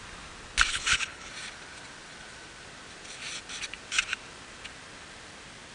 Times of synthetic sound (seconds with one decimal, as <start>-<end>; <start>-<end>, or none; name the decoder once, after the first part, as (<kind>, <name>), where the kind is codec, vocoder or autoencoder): 0.7-1.3 (codec, HILCodec)